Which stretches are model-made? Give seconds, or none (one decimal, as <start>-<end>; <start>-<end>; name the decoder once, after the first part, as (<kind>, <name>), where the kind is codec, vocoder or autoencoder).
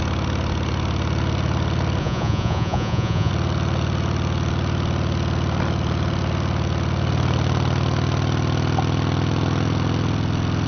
2.0-3.3 (vocoder, Vocos)